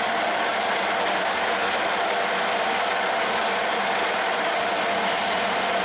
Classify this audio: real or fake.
real